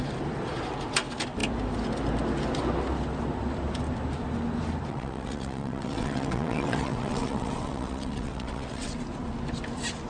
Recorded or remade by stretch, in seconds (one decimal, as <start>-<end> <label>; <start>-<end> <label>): 0.0-4.9 recorded; 4.9-8.9 remade; 8.9-10.1 recorded

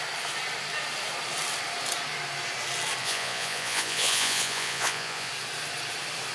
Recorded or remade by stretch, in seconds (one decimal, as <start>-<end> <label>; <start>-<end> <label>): 0.0-3.0 recorded; 3.0-5.3 remade; 5.3-6.3 recorded

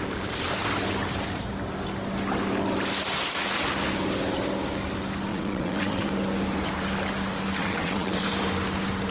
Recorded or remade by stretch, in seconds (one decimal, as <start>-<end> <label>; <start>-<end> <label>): 0.0-5.3 recorded; 5.3-6.1 remade; 6.1-7.6 recorded; 7.6-8.2 remade; 8.2-9.1 recorded

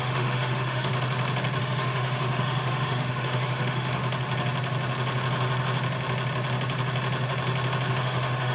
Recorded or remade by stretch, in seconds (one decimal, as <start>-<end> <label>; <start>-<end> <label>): 0.0-0.9 remade; 0.9-1.6 recorded; 1.6-4.0 remade; 4.0-7.9 recorded; 7.9-8.5 remade

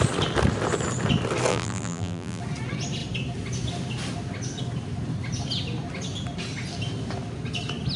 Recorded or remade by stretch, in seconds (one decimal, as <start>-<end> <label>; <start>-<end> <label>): 0.0-1.5 recorded; 1.5-2.4 remade; 2.4-8.0 recorded

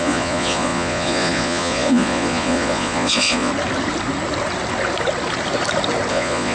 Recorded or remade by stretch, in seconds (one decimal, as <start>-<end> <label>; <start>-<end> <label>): 0.0-3.5 remade; 3.5-6.1 recorded; 6.1-6.5 remade

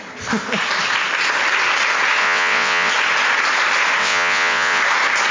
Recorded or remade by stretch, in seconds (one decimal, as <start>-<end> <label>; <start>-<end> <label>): 0.0-2.2 recorded; 2.2-2.9 remade; 2.9-4.0 recorded; 4.0-4.8 remade; 4.8-5.3 recorded

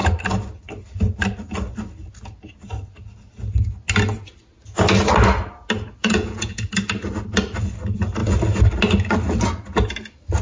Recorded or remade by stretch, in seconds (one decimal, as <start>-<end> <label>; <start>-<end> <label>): 0.0-6.0 recorded; 6.0-6.6 remade; 6.6-10.4 recorded